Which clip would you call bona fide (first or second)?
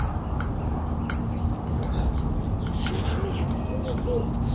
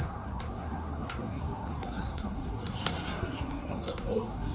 first